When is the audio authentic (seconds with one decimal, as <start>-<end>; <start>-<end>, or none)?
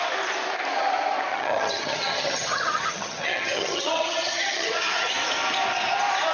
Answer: 0.0-1.3; 5.1-6.3